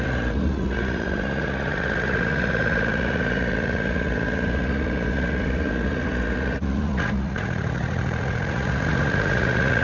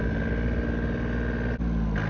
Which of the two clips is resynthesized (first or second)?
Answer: first